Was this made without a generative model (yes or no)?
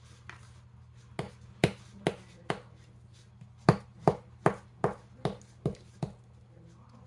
yes